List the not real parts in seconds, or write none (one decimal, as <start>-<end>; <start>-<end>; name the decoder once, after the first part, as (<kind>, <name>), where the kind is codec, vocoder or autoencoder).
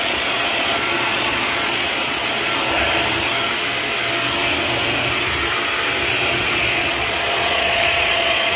0.0-2.2 (vocoder, Vocos); 6.3-8.6